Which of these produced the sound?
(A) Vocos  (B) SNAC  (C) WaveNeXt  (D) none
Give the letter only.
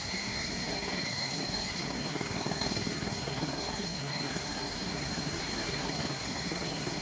B